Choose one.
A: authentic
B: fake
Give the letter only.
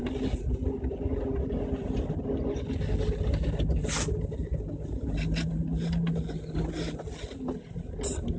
A